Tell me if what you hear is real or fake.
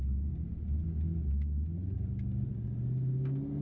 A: real